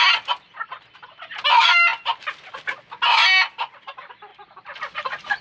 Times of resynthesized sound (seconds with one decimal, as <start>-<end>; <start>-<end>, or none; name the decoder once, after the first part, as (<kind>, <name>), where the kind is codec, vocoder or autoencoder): 1.9-2.5 (vocoder, BigVGAN v2); 4.3-5.4